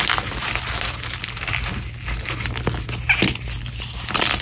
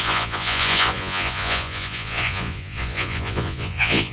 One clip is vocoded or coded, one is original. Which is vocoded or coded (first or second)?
second